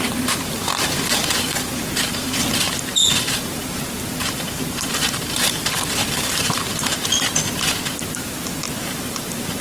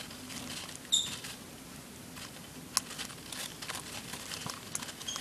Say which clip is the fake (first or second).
first